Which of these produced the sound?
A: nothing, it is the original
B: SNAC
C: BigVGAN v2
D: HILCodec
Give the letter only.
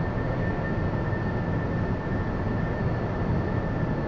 A